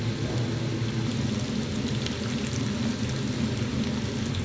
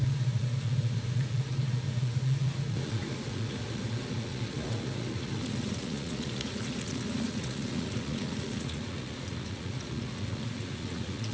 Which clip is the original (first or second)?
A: first